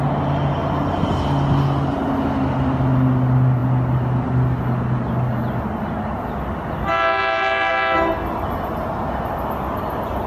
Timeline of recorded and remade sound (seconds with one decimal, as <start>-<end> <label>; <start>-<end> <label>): 0.0-0.6 recorded; 0.6-1.2 remade; 1.2-10.3 recorded